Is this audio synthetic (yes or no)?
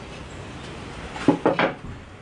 no